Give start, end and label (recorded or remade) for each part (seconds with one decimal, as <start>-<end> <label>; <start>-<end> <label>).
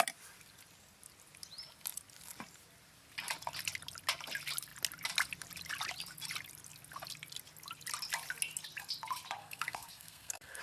0.0-9.4 recorded; 9.4-10.6 remade